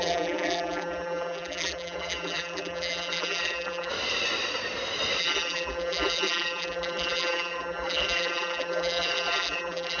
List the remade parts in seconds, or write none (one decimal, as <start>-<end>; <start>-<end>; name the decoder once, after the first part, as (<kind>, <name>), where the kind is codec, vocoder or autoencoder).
0.0-3.9 (vocoder, BigVGAN v2); 5.2-10.0